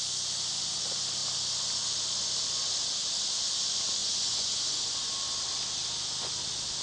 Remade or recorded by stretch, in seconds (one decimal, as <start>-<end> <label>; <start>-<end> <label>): 0.0-4.0 recorded; 4.0-5.1 remade; 5.1-6.8 recorded